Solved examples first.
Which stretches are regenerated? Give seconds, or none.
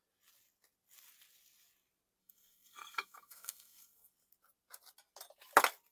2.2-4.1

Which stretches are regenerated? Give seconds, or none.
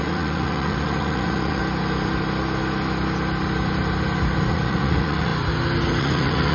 0.0-1.6; 4.5-5.3; 6.0-6.5